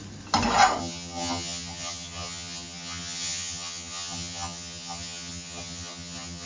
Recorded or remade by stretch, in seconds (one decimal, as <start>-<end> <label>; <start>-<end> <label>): 0.0-0.8 recorded; 0.8-6.5 remade